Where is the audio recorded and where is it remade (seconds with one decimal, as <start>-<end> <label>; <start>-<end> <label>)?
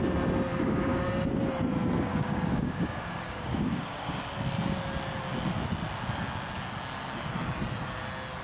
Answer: 0.0-0.5 recorded; 0.5-1.1 remade; 1.1-2.1 recorded; 2.1-4.2 remade; 4.2-8.4 recorded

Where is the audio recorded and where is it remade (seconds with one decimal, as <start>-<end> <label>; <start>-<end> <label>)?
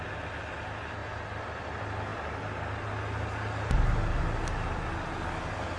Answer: 0.0-5.8 recorded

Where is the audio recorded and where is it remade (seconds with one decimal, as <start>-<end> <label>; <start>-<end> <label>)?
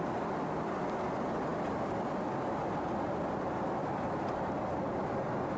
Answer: 0.0-5.6 recorded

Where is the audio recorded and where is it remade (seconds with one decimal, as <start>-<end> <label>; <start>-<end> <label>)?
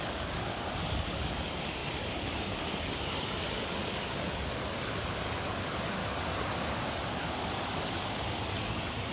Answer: 0.0-6.0 remade; 6.0-7.1 recorded; 7.1-9.1 remade